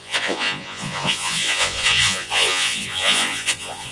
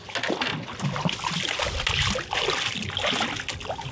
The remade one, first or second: first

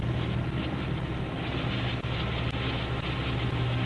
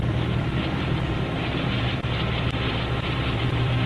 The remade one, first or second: second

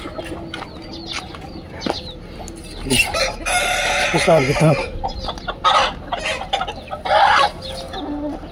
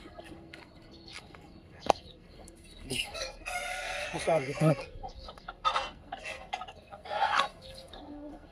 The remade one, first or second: second